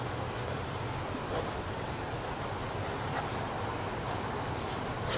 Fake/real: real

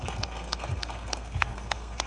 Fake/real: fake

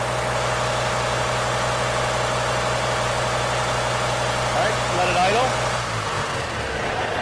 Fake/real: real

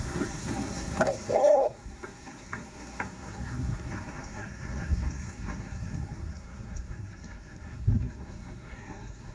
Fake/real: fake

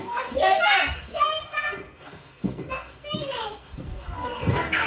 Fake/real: fake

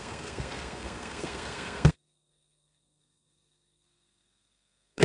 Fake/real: fake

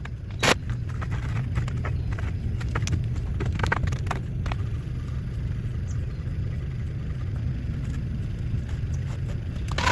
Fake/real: real